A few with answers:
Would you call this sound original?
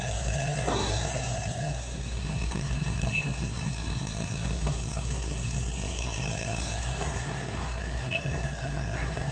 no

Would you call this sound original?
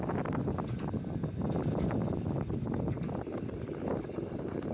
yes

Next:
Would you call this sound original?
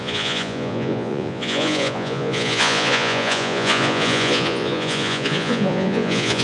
no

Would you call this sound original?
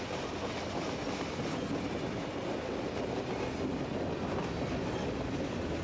yes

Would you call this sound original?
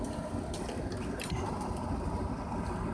yes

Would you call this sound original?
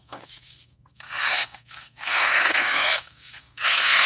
no